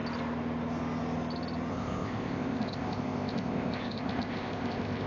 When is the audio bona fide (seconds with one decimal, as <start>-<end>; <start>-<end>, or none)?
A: 0.0-1.7